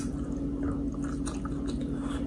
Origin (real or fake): real